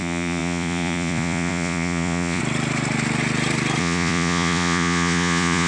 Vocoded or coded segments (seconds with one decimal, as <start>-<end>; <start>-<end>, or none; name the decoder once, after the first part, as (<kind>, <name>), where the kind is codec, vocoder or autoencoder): 0.0-2.4 (vocoder, Vocos); 3.8-5.7